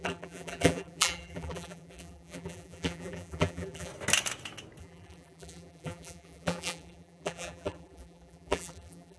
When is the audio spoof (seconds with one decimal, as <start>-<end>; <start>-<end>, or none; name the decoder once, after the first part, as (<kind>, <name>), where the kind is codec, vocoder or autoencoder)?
0.0-3.9 (vocoder, BigVGAN v2); 4.8-9.2